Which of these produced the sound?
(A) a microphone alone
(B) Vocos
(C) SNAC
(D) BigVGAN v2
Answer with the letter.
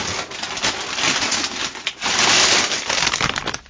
A